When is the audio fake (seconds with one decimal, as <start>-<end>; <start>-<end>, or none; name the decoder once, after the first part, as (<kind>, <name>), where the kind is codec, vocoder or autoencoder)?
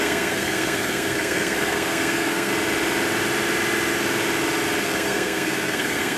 0.0-2.5 (codec, SNAC); 4.8-6.2